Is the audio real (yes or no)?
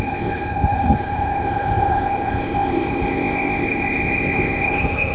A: no